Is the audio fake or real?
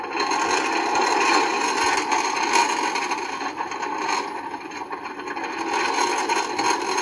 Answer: real